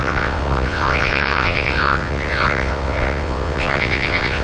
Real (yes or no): no